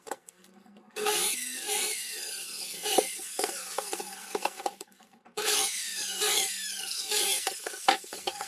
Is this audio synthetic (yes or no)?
yes